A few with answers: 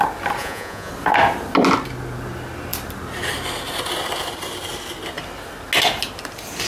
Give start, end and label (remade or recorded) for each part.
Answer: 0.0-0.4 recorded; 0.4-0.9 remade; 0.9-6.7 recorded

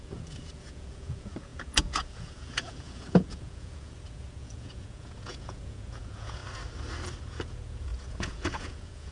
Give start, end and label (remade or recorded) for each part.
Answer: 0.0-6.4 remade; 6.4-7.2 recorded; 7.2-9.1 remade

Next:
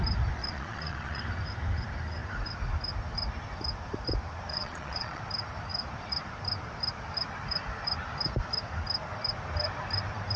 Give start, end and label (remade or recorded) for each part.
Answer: 0.0-0.4 recorded; 0.4-1.2 remade; 1.2-4.5 recorded; 4.5-5.2 remade; 5.2-10.4 recorded

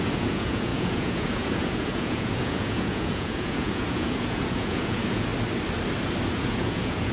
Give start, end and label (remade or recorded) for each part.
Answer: 0.0-5.3 remade; 5.3-6.3 recorded; 6.3-7.1 remade